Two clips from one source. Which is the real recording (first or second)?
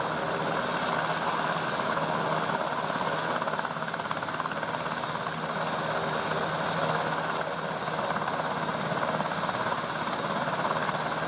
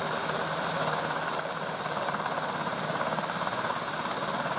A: first